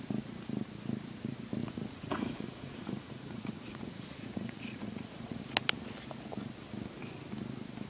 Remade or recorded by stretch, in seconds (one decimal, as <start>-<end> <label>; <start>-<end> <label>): 0.0-1.6 recorded; 1.6-5.4 remade; 5.4-7.9 recorded